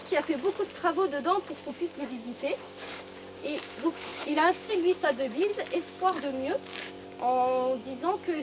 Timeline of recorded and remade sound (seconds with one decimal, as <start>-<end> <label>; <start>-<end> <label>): 0.0-1.7 recorded; 1.7-5.5 remade; 5.5-6.2 recorded; 6.2-8.4 remade